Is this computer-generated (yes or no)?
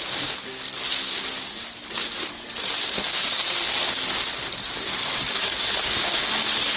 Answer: no